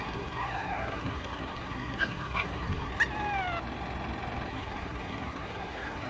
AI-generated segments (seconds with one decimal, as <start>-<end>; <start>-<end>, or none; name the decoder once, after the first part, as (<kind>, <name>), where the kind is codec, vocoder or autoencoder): 0.0-2.9 (codec, SNAC); 4.5-6.1